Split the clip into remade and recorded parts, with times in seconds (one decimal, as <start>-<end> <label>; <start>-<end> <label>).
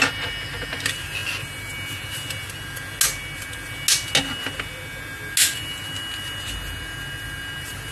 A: 0.0-7.9 recorded